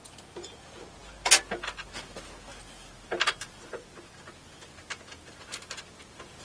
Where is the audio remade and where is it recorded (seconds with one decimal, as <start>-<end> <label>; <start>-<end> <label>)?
0.0-6.4 recorded